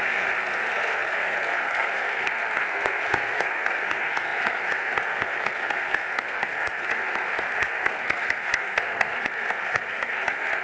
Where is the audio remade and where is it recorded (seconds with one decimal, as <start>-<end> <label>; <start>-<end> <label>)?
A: 0.0-10.6 remade